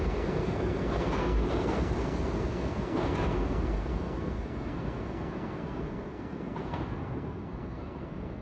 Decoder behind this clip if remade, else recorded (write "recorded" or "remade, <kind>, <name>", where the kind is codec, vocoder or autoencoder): remade, codec, SNAC